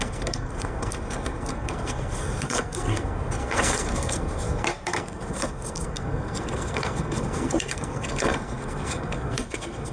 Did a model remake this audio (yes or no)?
yes